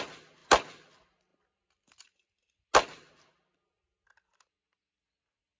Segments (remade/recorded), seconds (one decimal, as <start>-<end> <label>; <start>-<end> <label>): 0.0-5.6 recorded